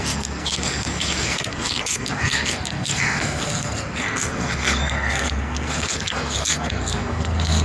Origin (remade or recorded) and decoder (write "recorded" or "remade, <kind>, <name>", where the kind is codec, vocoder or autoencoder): remade, codec, SNAC